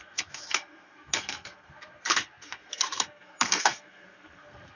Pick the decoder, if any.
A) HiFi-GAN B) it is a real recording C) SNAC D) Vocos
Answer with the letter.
C